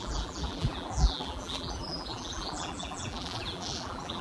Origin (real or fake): fake